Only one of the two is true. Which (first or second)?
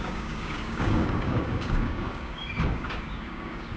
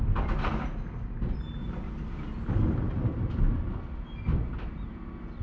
second